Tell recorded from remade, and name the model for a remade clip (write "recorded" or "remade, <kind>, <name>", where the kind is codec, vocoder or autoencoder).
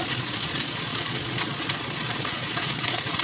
remade, vocoder, Vocos